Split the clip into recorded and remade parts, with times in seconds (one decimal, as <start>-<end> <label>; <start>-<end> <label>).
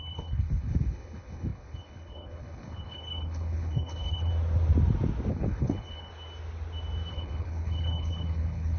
0.0-4.3 remade; 4.3-5.3 recorded; 5.3-6.1 remade; 6.1-7.1 recorded; 7.1-8.8 remade